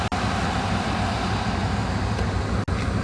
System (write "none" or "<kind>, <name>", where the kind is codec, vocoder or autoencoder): none